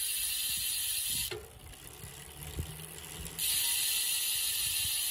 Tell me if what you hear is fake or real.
real